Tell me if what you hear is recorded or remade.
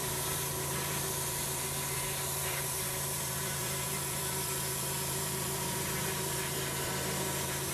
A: remade